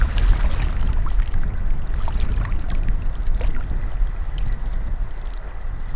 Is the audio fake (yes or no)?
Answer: no